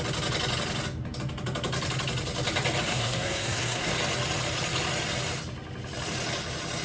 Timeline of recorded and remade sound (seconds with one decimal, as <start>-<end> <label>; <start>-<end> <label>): 0.0-2.9 recorded; 2.9-3.9 remade; 3.9-6.8 recorded